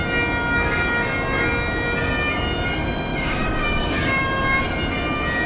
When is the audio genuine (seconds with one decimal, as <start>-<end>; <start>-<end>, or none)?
0.0-3.1; 4.6-5.5